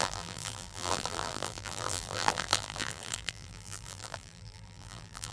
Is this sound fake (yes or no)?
yes